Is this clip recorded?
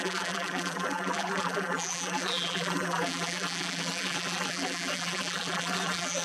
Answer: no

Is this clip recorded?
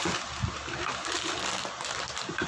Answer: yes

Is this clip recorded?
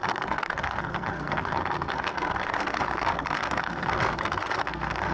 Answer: no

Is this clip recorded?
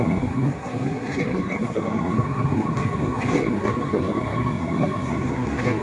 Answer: no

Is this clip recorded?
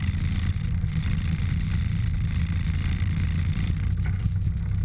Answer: yes